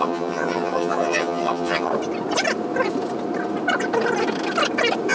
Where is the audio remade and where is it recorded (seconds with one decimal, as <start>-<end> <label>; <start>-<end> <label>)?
0.0-1.9 remade; 1.9-5.1 recorded